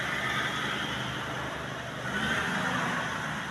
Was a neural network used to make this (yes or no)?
no